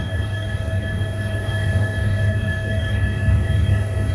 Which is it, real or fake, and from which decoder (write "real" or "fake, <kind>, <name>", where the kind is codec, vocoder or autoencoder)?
fake, codec, DAC